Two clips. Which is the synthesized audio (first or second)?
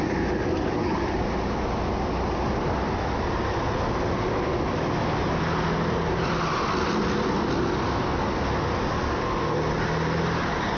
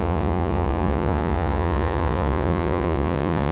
second